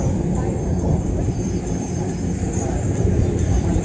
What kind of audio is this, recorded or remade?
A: remade